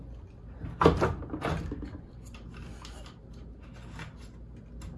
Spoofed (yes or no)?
no